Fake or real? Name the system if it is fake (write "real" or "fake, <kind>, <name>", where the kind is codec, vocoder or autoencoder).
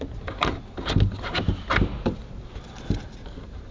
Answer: real